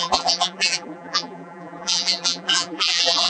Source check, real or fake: fake